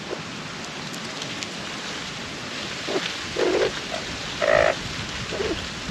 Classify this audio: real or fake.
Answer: real